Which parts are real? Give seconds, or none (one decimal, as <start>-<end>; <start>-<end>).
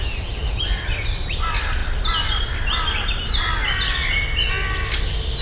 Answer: 0.0-5.4